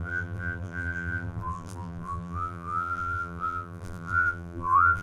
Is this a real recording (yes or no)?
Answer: no